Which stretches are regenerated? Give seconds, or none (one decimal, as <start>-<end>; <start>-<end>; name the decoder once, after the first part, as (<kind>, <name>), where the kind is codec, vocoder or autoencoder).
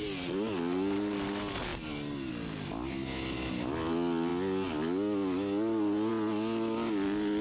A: none